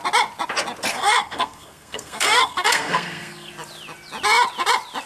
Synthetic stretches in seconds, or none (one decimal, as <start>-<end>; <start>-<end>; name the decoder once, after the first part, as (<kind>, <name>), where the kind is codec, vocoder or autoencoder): 0.9-3.5 (codec, SNAC)